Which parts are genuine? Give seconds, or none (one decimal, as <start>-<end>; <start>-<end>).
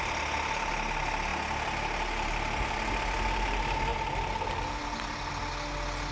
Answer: 0.0-6.1